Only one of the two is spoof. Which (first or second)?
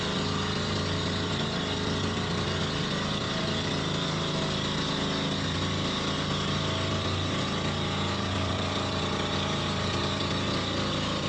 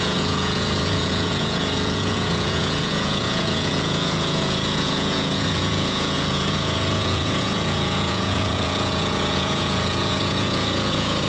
second